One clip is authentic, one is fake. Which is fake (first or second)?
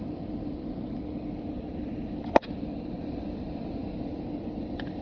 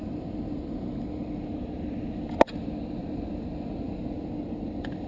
first